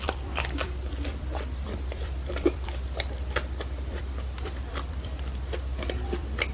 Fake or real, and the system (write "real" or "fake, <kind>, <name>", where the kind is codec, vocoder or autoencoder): fake, vocoder, BigVGAN v2